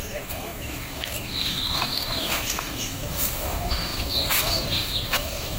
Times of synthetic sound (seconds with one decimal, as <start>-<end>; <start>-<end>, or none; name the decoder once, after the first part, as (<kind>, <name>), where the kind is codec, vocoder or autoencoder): 0.0-5.6 (codec, DAC)